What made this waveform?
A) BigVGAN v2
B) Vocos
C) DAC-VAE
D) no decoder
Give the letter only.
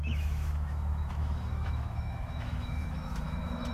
C